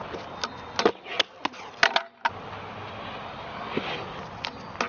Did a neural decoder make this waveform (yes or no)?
no